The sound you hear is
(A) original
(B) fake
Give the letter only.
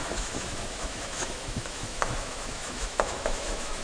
B